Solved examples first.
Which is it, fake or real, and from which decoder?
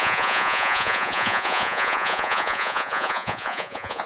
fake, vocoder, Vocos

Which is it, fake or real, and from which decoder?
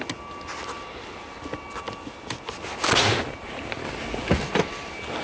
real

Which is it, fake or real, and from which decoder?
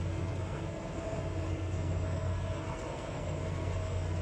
fake, codec, SNAC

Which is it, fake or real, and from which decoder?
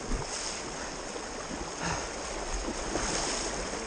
real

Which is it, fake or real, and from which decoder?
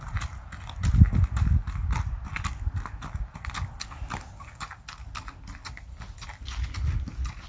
real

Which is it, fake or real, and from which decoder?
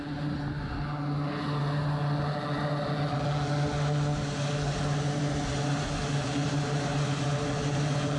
real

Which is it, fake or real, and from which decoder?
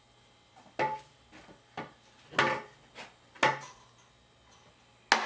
real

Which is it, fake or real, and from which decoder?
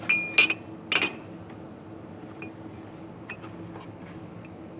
real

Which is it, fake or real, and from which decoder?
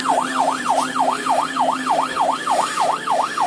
fake, vocoder, BigVGAN v2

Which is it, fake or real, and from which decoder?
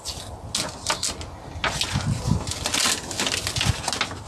real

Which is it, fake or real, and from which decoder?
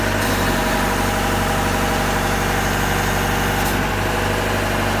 real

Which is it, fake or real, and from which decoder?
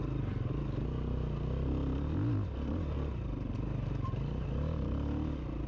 real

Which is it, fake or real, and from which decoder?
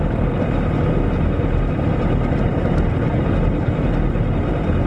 real